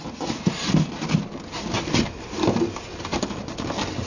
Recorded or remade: recorded